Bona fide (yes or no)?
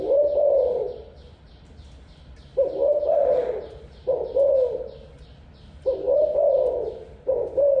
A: yes